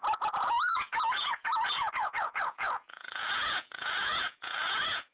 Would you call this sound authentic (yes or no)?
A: no